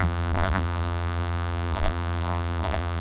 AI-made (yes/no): yes